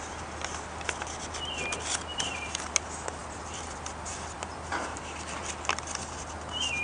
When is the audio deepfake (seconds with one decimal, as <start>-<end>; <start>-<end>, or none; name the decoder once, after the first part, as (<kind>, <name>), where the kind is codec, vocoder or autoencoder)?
2.1-2.7 (vocoder, BigVGAN v2); 3.2-5.0